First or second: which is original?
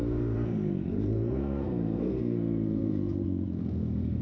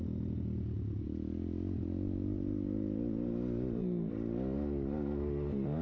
second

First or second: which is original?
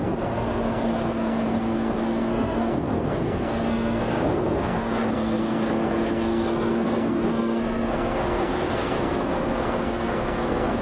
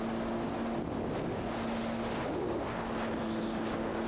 second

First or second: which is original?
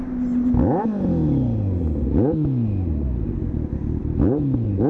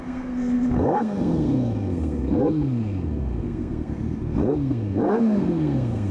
first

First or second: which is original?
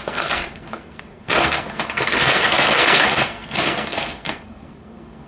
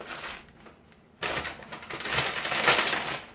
second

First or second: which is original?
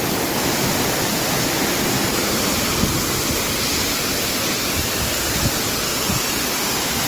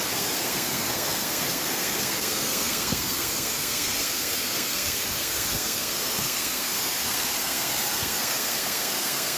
first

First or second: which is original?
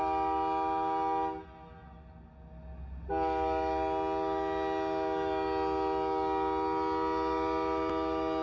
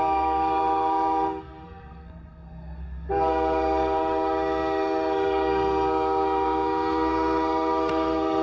first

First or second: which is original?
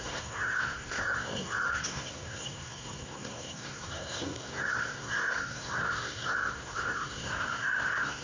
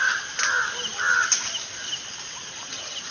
second